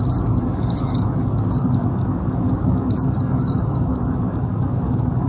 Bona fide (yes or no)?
no